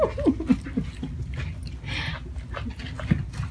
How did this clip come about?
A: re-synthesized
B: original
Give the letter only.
B